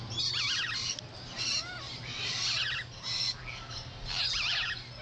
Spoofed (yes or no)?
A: no